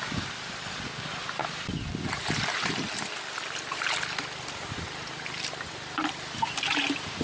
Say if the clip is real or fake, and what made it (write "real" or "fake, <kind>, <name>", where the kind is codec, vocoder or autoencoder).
real